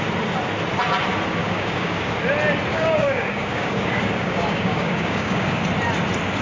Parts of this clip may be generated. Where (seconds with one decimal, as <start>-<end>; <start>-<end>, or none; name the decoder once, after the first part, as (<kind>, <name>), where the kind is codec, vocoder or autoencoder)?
1.4-2.1 (codec, DAC); 2.7-5.6